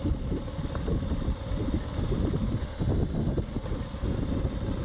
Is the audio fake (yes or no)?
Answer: no